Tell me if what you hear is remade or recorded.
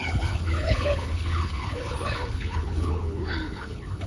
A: remade